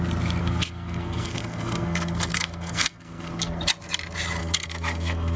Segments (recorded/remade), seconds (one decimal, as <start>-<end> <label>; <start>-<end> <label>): 0.0-0.4 recorded; 0.4-3.6 remade; 3.6-4.4 recorded; 4.4-5.4 remade